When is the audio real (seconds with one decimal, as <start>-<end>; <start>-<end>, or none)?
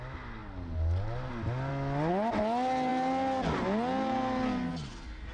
0.0-5.3